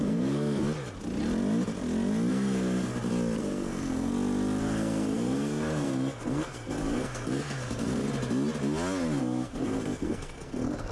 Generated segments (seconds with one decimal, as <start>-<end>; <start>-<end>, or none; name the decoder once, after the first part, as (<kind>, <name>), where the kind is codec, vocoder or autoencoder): 0.0-0.6 (codec, SNAC); 2.3-2.9; 3.4-4.1; 4.6-8.0; 9.2-10.9